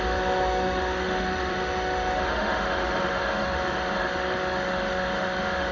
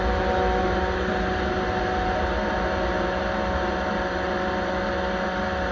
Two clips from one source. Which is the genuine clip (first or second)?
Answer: second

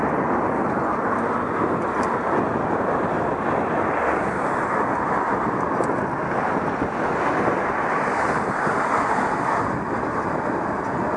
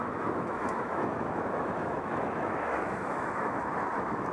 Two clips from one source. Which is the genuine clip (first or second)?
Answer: first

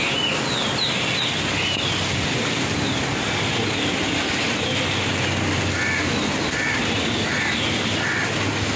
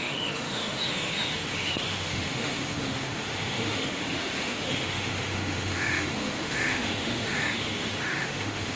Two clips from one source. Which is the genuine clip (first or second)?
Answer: first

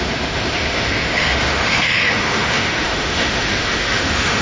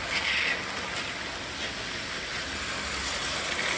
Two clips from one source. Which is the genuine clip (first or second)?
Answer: second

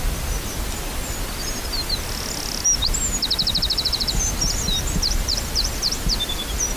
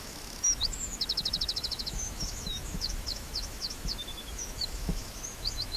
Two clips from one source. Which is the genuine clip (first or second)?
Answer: first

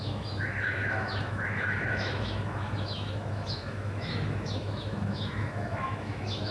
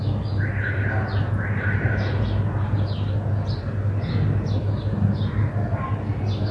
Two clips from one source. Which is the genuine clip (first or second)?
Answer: second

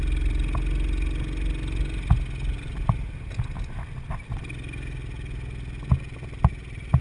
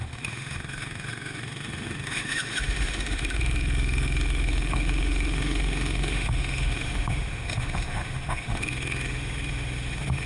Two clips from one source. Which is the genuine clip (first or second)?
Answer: first